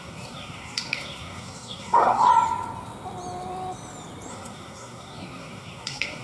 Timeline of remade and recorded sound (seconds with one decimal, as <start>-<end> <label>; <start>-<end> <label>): 0.0-2.3 remade; 2.3-4.3 recorded; 4.3-6.2 remade